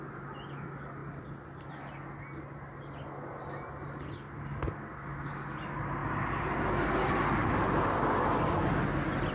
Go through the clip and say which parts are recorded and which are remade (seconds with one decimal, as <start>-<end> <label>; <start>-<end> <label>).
0.0-9.3 recorded